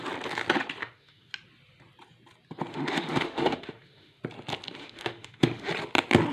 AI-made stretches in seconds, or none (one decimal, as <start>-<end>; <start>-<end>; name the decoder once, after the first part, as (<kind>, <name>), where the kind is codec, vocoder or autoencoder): 0.8-1.3 (autoencoder, DAC-VAE); 2.7-4.2; 4.8-5.7